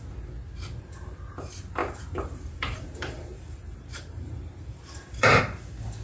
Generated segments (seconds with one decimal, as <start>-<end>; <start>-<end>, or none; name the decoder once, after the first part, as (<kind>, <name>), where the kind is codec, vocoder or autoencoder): 1.8-5.4 (vocoder, BigVGAN v2)

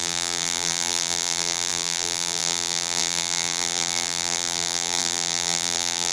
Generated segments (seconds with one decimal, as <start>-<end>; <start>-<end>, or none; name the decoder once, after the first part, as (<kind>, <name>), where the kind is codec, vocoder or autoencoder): 0.0-6.1 (vocoder, BigVGAN v2)

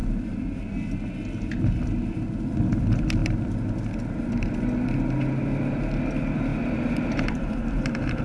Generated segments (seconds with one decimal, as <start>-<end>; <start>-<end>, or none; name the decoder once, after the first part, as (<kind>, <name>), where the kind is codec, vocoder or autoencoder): 0.0-0.7 (vocoder, BigVGAN v2); 6.5-8.2

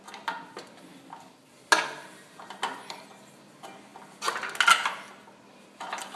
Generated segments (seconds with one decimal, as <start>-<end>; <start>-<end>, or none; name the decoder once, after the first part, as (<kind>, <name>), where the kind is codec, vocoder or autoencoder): none

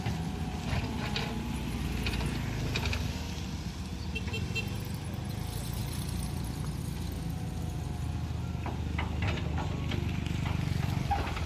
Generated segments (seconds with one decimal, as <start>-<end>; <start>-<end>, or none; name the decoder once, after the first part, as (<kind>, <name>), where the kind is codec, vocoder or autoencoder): none

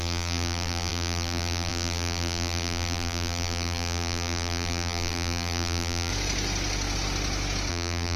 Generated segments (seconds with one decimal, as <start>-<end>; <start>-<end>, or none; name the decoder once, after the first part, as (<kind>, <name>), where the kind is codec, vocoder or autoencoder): 0.0-6.1 (vocoder, BigVGAN v2); 7.7-8.2

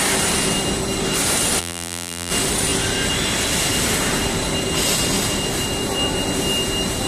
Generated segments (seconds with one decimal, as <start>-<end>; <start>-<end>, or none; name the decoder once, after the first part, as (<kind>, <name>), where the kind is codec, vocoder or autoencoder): 1.6-2.3 (vocoder, BigVGAN v2)

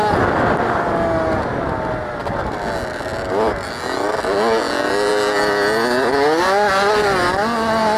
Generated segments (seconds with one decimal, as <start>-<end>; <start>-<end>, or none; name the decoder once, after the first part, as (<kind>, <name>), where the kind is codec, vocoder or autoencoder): none